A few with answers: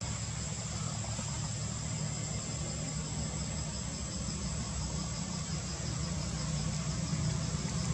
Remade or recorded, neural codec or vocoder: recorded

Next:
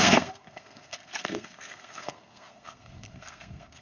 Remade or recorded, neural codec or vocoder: remade, codec, SNAC